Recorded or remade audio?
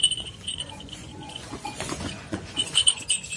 remade